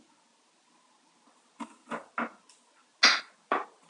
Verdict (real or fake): real